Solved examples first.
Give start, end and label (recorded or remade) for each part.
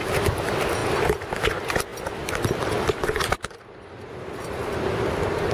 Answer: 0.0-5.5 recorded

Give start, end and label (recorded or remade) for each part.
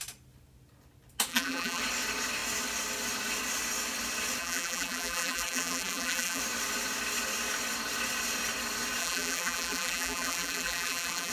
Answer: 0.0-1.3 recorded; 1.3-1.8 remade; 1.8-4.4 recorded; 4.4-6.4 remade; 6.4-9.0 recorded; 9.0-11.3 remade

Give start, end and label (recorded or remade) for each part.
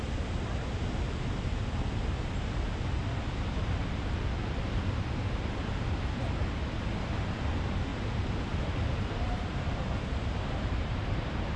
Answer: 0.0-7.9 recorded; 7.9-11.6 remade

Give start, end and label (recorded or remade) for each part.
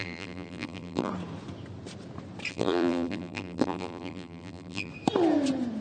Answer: 0.0-1.1 remade; 1.1-2.5 recorded; 2.5-4.9 remade; 4.9-5.8 recorded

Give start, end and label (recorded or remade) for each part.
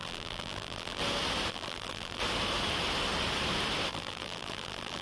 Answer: 0.0-1.0 remade; 1.0-1.5 recorded; 1.5-2.2 remade; 2.2-3.9 recorded; 3.9-5.0 remade